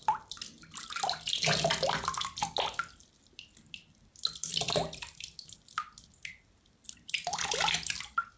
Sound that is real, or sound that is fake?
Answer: real